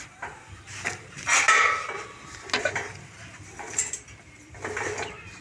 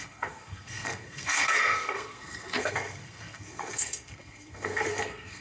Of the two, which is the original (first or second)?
first